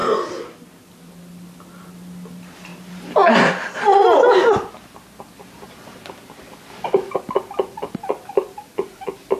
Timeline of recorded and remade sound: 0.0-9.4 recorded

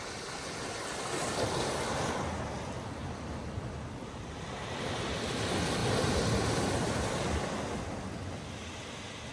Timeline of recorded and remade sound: 0.0-3.0 recorded; 3.0-3.7 remade; 3.7-9.3 recorded

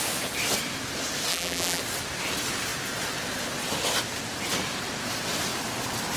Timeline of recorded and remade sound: 0.0-1.3 recorded; 1.3-1.8 remade; 1.8-6.2 recorded